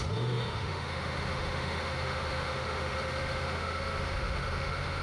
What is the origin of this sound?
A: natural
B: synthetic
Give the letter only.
B